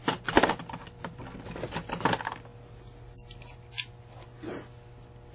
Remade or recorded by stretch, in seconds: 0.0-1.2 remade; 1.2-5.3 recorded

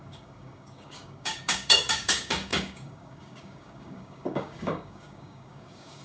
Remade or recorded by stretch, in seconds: 0.0-6.0 remade

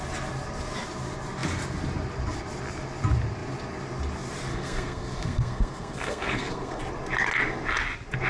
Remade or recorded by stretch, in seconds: 0.0-4.5 recorded; 4.5-6.8 remade; 6.8-8.3 recorded

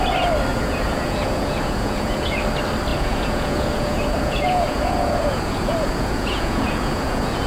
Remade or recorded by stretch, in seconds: 0.0-0.5 recorded; 0.5-2.4 remade; 2.4-2.9 recorded; 2.9-7.5 remade

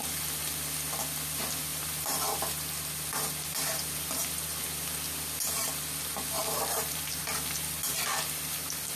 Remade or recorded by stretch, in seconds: 0.0-1.7 recorded; 1.7-2.2 remade; 2.2-6.4 recorded; 6.4-7.2 remade; 7.2-9.0 recorded

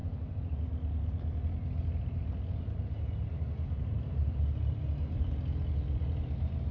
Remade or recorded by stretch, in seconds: 0.0-6.7 recorded

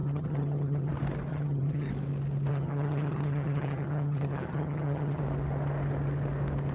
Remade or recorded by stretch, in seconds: 0.0-0.9 remade; 0.9-1.3 recorded; 1.3-1.9 remade; 1.9-2.5 recorded; 2.5-5.2 remade; 5.2-6.7 recorded

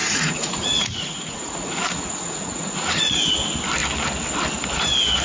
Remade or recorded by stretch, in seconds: 0.0-3.1 remade; 3.1-5.2 recorded